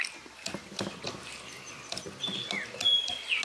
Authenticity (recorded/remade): recorded